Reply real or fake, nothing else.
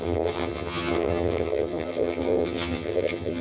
fake